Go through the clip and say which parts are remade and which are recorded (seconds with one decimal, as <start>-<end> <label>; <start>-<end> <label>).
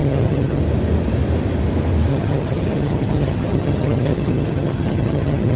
0.0-0.6 remade; 0.6-2.1 recorded; 2.1-5.6 remade